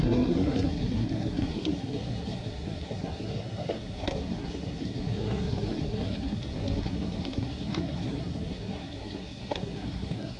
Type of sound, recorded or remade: remade